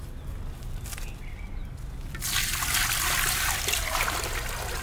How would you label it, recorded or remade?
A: recorded